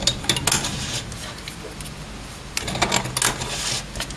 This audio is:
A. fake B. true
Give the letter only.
B